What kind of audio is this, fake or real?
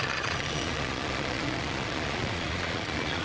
fake